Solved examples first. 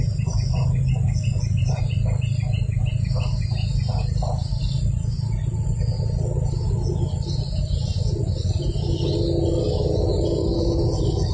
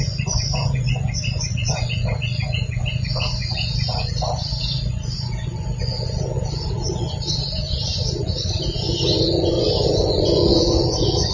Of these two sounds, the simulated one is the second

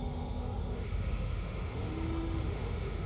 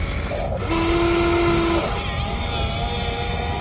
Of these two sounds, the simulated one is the first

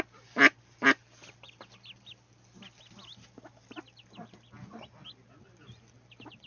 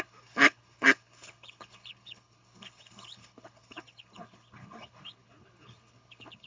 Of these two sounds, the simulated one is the second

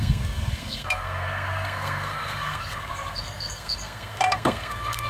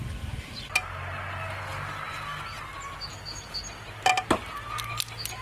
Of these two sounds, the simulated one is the first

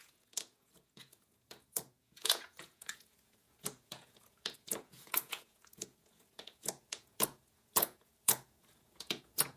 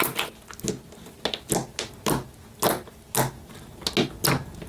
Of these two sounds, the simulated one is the first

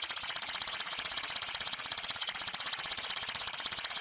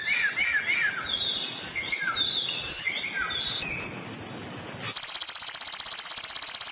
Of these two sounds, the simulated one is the first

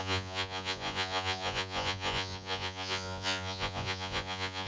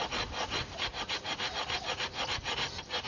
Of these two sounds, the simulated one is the first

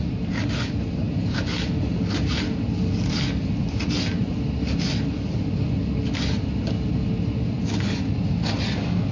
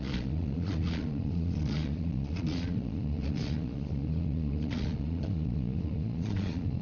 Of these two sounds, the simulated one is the second